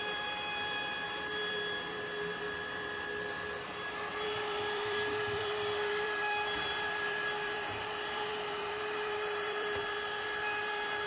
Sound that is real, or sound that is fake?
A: fake